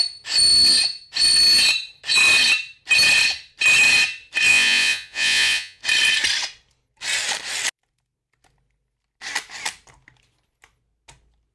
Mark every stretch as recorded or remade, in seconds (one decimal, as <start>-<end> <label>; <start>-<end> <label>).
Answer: 0.0-4.5 recorded; 4.5-5.8 remade; 5.8-11.5 recorded

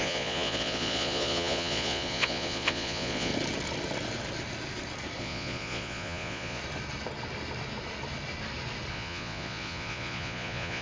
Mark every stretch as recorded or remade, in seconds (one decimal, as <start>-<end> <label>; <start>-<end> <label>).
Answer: 0.0-3.3 remade; 3.3-5.2 recorded; 5.2-6.6 remade; 6.6-8.9 recorded; 8.9-10.8 remade

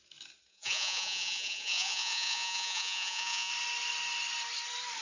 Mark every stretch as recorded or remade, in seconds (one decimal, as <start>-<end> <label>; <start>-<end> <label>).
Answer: 0.0-0.5 recorded; 0.5-3.5 remade; 3.5-5.0 recorded

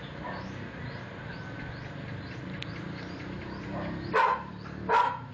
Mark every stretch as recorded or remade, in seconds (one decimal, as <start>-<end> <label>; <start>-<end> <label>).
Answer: 0.0-5.3 recorded

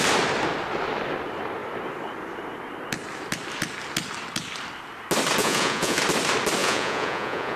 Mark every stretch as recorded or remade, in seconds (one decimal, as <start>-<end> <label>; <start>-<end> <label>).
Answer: 0.0-5.4 recorded; 5.4-6.0 remade; 6.0-6.6 recorded; 6.6-7.6 remade

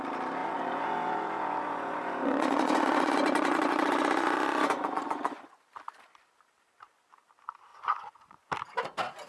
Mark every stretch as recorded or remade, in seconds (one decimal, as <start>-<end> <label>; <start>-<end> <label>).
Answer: 0.0-0.4 recorded; 0.4-5.6 remade; 5.6-7.7 recorded; 7.7-8.5 remade; 8.5-9.3 recorded